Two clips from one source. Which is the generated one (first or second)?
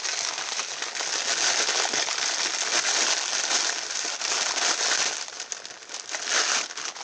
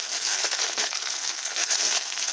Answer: second